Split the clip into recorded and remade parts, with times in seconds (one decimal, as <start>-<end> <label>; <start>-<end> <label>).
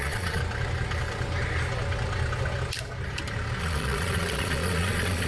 0.0-0.4 remade; 0.4-3.6 recorded; 3.6-5.3 remade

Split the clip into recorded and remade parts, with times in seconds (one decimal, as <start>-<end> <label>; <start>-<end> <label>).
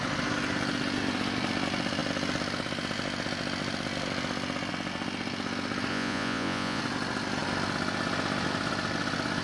0.0-5.9 recorded; 5.9-6.8 remade; 6.8-9.4 recorded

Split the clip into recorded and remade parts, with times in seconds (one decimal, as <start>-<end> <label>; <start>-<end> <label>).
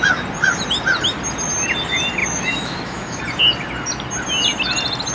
0.0-2.2 recorded; 2.2-3.2 remade; 3.2-5.1 recorded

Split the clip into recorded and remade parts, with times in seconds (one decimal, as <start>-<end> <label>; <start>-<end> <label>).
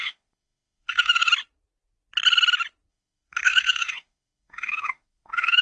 0.0-1.3 remade; 1.3-2.9 recorded; 2.9-5.6 remade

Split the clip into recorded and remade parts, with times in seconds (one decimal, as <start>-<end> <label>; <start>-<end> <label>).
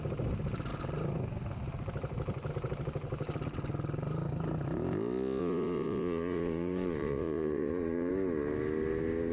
0.0-5.4 recorded; 5.4-8.1 remade; 8.1-9.3 recorded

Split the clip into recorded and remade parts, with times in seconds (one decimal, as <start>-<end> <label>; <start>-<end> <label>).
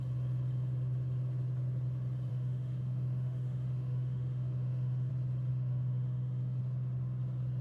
0.0-2.3 recorded; 2.3-5.1 remade; 5.1-5.5 recorded; 5.5-6.6 remade; 6.6-7.6 recorded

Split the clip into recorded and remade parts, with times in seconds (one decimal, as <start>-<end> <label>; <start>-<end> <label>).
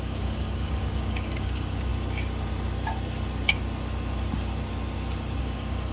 0.0-1.9 remade; 1.9-5.4 recorded; 5.4-5.9 remade